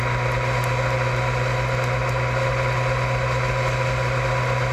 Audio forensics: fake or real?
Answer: real